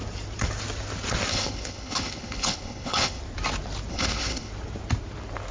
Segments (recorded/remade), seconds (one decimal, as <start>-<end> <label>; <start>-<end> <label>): 0.0-1.3 recorded; 1.3-3.2 remade; 3.2-3.9 recorded; 3.9-4.5 remade; 4.5-5.5 recorded